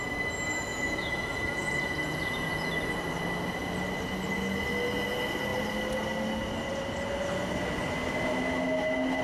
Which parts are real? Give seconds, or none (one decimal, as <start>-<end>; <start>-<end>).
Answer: 0.0-0.7; 2.7-9.2